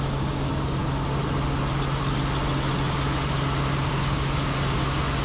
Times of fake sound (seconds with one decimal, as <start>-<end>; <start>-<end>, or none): 0.0-0.8; 3.9-5.2